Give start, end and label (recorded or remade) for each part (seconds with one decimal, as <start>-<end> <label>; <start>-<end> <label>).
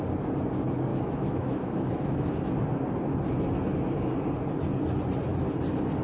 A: 0.0-0.9 recorded; 0.9-2.3 remade; 2.3-6.0 recorded